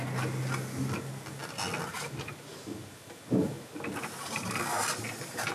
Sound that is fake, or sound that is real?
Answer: real